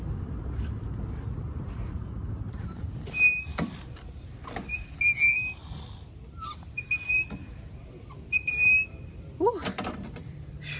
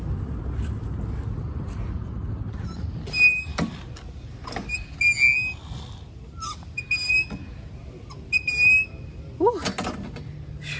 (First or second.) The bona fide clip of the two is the second